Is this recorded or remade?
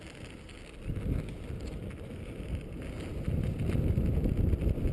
recorded